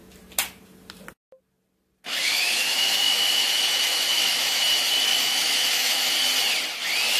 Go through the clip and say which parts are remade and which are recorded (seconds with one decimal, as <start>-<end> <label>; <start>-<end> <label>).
0.0-2.1 recorded; 2.1-4.6 remade; 4.6-5.1 recorded; 5.1-6.1 remade; 6.1-7.2 recorded